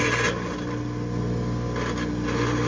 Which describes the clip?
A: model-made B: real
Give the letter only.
B